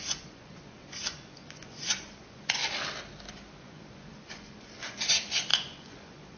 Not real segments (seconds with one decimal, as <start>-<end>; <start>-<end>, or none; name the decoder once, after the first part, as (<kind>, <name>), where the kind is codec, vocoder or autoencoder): 0.0-2.6 (vocoder, Vocos); 3.3-6.4